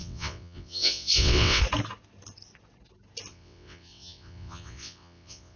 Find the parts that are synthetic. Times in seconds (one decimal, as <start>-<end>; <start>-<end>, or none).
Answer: 0.0-1.6; 3.3-5.6